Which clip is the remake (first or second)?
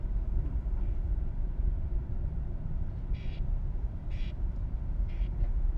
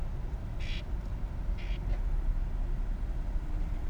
first